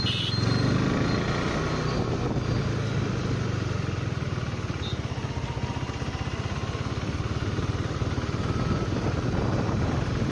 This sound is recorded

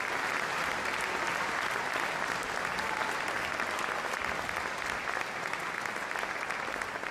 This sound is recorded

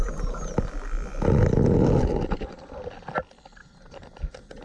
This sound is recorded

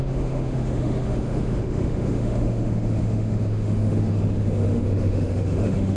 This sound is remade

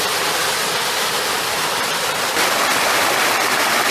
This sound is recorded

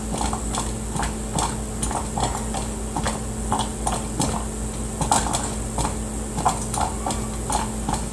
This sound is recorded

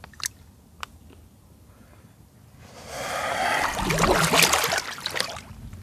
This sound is recorded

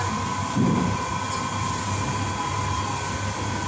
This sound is recorded